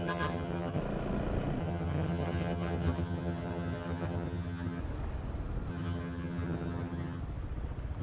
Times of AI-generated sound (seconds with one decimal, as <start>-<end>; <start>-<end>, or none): 0.0-0.8; 1.6-4.8; 5.7-7.2